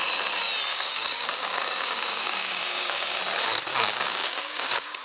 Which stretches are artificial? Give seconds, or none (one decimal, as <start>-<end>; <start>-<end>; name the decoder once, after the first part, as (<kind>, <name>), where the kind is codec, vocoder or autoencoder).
0.7-3.2 (codec, DAC); 3.7-5.0